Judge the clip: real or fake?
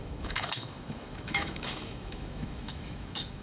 fake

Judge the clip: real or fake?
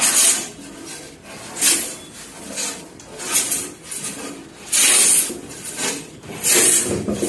real